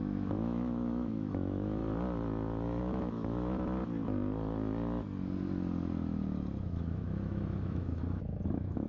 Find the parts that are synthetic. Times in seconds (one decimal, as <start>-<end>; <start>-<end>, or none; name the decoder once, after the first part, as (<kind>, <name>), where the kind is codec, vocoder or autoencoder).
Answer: 0.0-1.8 (autoencoder, DAC-VAE); 2.8-3.8; 6.6-8.9